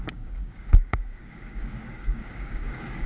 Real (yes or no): no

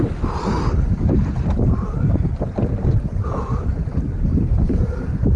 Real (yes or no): yes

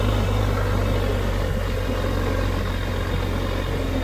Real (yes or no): yes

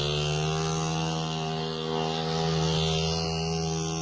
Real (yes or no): yes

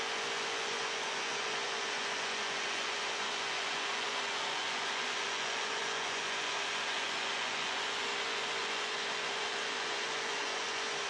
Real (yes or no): no